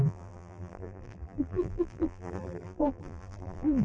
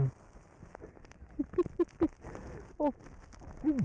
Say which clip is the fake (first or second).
first